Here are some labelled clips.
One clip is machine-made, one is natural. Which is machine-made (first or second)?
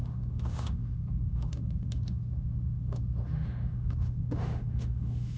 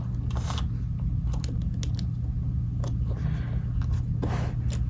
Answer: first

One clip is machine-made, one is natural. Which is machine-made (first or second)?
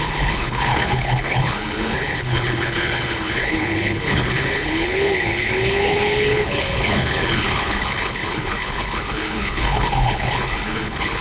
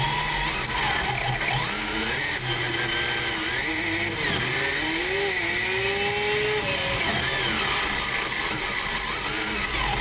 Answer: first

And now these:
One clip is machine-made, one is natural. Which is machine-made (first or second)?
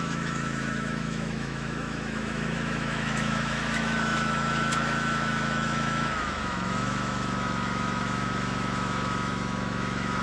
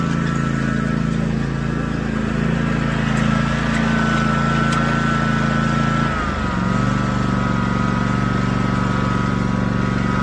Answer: first